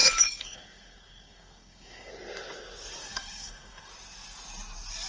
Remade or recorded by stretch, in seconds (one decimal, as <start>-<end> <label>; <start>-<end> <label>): 0.0-2.1 remade; 2.1-3.0 recorded; 3.0-3.9 remade; 3.9-5.1 recorded

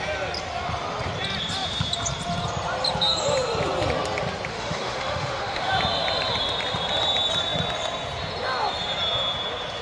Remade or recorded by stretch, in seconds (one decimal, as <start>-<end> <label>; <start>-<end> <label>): 0.0-4.5 recorded; 4.5-5.7 remade; 5.7-9.8 recorded

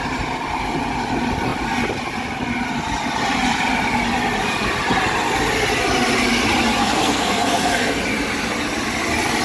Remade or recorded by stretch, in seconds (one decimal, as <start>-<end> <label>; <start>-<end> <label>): 0.0-6.8 recorded; 6.8-8.0 remade; 8.0-9.4 recorded

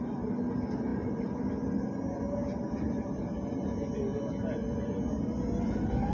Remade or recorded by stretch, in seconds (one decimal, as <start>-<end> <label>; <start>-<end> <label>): 0.0-6.1 recorded

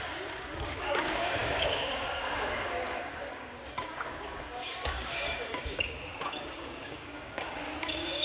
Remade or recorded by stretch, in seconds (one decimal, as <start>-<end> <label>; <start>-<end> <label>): 0.0-8.2 remade

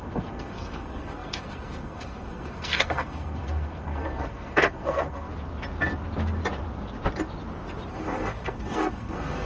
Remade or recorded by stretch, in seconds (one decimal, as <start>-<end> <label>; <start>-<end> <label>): 0.0-5.3 remade; 5.3-7.9 recorded; 7.9-9.5 remade

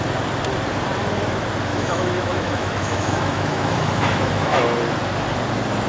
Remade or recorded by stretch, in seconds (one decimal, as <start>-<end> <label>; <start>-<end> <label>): 0.0-1.7 recorded; 1.7-4.6 remade; 4.6-5.9 recorded

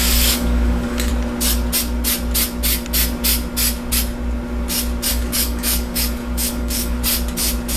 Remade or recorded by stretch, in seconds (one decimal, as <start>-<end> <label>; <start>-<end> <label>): 0.0-1.1 remade; 1.1-5.1 recorded; 5.1-7.0 remade; 7.0-7.8 recorded